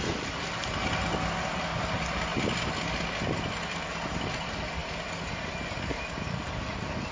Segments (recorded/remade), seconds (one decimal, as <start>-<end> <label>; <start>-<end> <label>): 0.0-7.1 recorded